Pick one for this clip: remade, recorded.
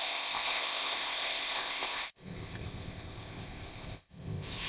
remade